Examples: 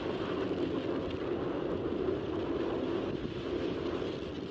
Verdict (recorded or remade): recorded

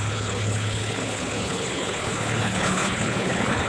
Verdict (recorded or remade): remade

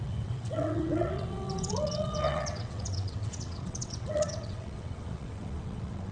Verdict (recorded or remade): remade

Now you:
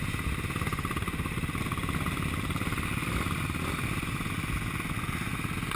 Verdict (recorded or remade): recorded